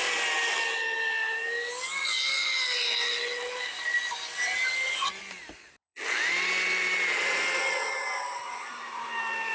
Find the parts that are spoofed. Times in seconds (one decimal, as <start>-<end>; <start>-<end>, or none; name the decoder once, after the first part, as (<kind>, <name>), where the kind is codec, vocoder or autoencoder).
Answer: none